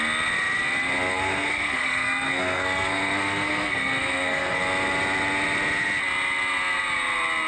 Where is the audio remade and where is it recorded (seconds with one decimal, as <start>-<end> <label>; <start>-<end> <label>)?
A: 0.0-1.1 recorded; 1.1-4.6 remade; 4.6-7.5 recorded